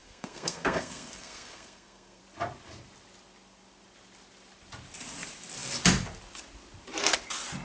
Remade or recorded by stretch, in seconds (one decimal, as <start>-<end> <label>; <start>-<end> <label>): 0.0-2.2 remade; 2.2-7.6 recorded

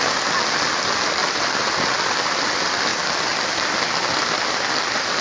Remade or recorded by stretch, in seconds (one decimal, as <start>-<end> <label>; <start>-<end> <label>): 0.0-5.2 recorded

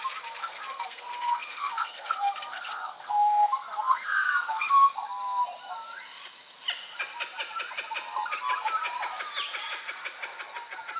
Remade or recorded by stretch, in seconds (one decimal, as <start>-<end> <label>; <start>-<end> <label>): 0.0-0.4 recorded; 0.4-4.7 remade; 4.7-11.0 recorded

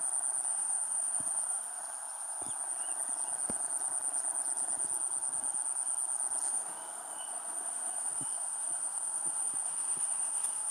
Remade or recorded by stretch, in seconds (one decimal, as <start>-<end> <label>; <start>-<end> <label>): 0.0-0.5 recorded; 0.5-1.8 remade; 1.8-6.5 recorded; 6.5-10.7 remade

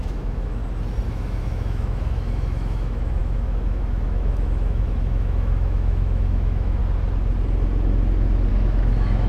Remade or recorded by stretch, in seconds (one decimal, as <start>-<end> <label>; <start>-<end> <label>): 0.0-0.6 remade; 0.6-1.1 recorded; 1.1-6.8 remade; 6.8-8.5 recorded; 8.5-9.3 remade

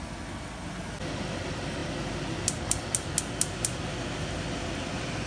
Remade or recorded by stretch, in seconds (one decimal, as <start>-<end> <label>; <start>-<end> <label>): 0.0-5.3 recorded

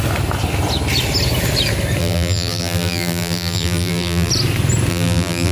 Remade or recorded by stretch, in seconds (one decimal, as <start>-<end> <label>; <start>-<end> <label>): 0.0-2.0 recorded; 2.0-4.3 remade; 4.3-4.9 recorded; 4.9-5.5 remade

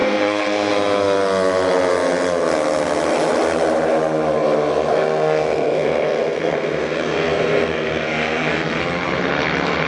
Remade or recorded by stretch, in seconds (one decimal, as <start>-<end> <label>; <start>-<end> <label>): 0.0-0.7 remade; 0.7-4.9 recorded; 4.9-8.8 remade; 8.8-9.9 recorded